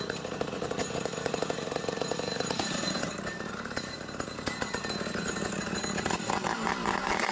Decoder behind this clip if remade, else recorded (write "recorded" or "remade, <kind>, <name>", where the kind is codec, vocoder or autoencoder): remade, vocoder, BigVGAN v2